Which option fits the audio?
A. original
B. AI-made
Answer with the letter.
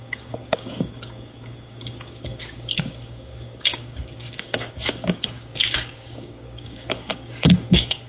B